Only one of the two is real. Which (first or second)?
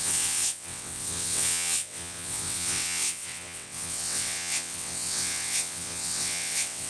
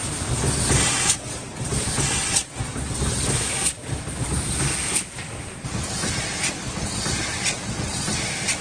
second